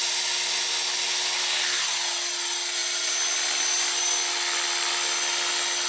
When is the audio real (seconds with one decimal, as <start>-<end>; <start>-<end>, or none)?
0.0-5.9